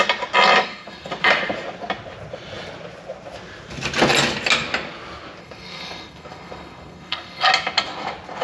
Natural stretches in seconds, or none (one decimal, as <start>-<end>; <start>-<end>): 0.0-0.6; 1.1-5.4; 7.5-8.4

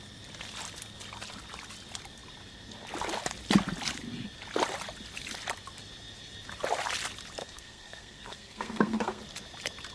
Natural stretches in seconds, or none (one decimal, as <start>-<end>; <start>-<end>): 0.0-7.4; 9.2-9.9

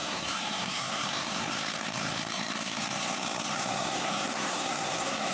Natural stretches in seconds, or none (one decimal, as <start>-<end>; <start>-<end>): none

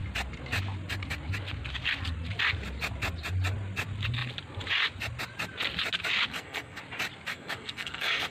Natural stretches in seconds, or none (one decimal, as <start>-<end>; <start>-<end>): 0.0-6.3; 6.8-7.3